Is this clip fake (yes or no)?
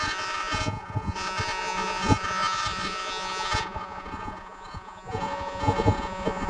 yes